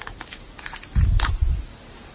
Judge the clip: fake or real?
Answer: real